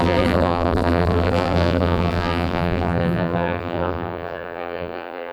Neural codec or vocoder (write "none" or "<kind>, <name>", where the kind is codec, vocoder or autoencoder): vocoder, BigVGAN v2